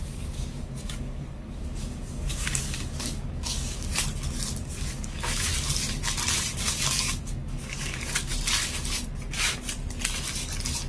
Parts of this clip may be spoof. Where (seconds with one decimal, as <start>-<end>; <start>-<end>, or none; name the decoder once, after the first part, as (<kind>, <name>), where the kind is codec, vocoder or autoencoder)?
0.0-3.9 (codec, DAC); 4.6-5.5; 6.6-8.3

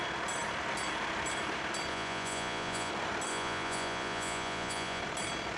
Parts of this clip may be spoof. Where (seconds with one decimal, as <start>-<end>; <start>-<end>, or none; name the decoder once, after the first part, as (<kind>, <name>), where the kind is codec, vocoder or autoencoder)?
1.9-2.9 (vocoder, Vocos); 3.3-5.0

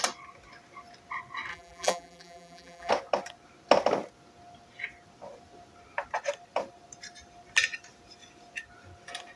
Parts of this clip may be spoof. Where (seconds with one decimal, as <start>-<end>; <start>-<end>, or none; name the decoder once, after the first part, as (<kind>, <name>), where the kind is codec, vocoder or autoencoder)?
1.5-2.9 (vocoder, BigVGAN v2)

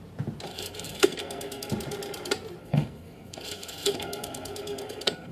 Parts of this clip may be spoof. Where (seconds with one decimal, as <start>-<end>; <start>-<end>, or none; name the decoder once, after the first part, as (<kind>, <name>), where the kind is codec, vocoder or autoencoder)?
0.5-1.7 (codec, SNAC); 2.6-5.3

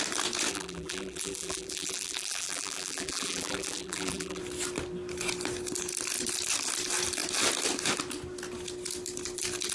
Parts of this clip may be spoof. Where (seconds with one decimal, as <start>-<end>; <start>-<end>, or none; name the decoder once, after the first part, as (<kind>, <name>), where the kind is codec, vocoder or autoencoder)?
0.5-4.4 (vocoder, BigVGAN v2)

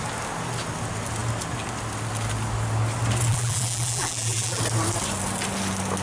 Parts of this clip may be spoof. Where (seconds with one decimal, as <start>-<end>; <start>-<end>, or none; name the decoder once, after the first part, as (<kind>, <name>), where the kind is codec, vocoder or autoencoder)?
3.3-4.6 (vocoder, BigVGAN v2)

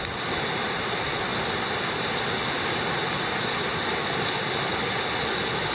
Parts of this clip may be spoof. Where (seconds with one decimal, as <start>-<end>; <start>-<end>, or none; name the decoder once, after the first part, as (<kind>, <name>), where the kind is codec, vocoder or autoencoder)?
none